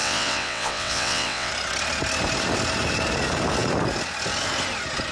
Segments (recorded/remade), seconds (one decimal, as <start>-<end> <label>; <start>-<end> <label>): 0.0-1.5 remade; 1.5-5.1 recorded